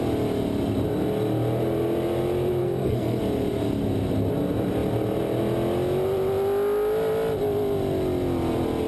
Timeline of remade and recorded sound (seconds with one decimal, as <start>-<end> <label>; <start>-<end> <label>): 0.0-2.6 recorded; 2.6-3.2 remade; 3.2-8.9 recorded